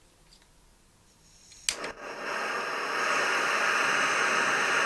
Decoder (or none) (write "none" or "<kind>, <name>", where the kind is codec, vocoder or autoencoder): none